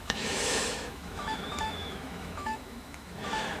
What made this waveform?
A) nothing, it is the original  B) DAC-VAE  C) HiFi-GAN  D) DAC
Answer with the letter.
B